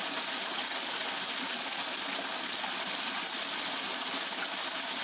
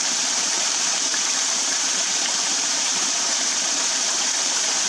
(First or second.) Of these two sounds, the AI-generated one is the second